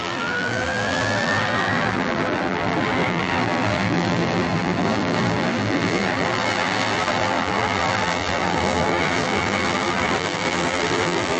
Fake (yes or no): yes